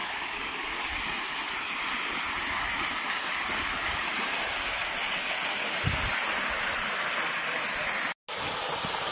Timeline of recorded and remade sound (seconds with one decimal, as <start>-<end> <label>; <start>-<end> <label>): 0.0-0.7 remade; 0.7-9.1 recorded

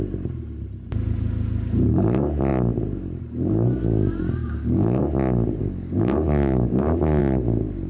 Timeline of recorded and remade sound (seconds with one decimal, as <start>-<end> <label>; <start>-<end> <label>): 0.0-4.2 recorded; 4.2-5.0 remade; 5.0-5.6 recorded; 5.6-7.2 remade; 7.2-7.9 recorded